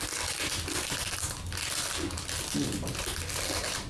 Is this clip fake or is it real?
real